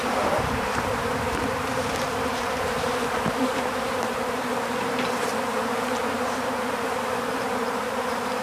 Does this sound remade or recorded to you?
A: remade